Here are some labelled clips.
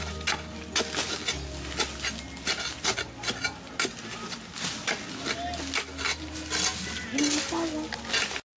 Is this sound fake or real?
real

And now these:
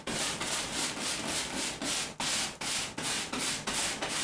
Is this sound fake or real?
real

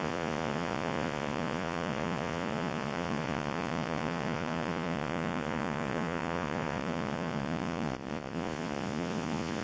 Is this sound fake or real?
fake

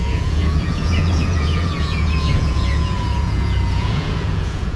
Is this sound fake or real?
fake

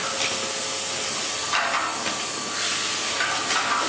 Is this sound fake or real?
real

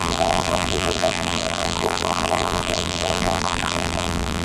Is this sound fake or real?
fake